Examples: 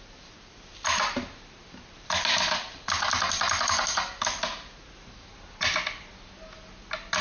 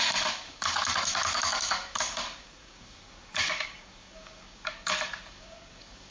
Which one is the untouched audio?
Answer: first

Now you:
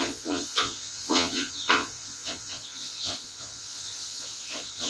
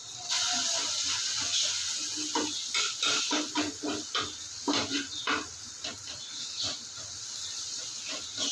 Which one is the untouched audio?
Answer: second